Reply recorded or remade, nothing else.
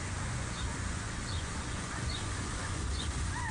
remade